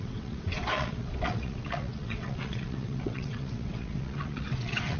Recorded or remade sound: remade